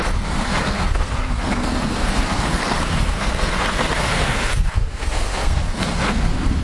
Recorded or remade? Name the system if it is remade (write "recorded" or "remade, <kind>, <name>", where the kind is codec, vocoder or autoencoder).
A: remade, codec, SNAC